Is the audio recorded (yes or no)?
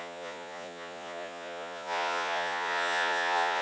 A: no